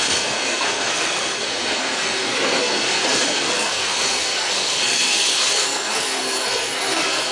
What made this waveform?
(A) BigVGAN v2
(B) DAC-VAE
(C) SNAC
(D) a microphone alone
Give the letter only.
C